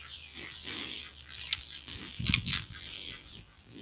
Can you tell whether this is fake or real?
fake